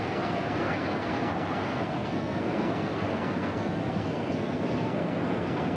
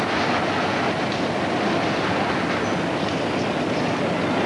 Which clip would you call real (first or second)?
second